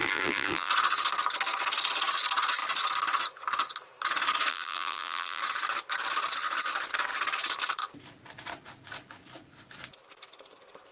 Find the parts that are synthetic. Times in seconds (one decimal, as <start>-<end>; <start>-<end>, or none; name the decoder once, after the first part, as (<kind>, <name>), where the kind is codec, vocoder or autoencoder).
0.0-0.7 (vocoder, BigVGAN v2); 4.5-5.4